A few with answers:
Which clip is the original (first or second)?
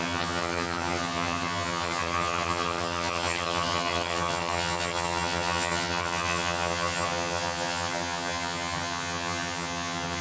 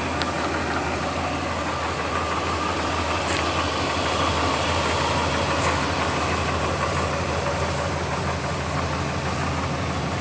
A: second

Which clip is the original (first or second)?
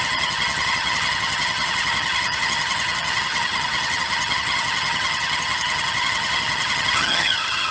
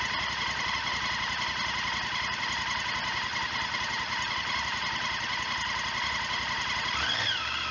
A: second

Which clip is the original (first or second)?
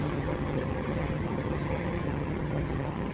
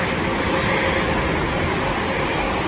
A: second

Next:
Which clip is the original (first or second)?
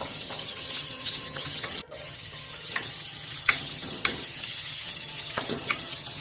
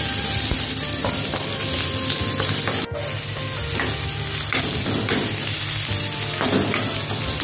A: second